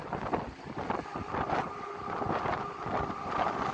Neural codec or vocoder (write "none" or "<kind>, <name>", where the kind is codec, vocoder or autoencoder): none